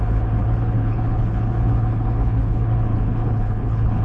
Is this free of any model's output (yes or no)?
no